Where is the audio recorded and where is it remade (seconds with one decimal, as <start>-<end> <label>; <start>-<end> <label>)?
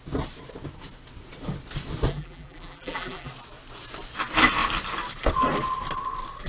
0.0-2.1 recorded; 2.1-3.3 remade; 3.3-6.5 recorded